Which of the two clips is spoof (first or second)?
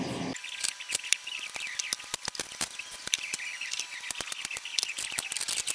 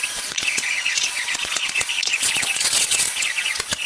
second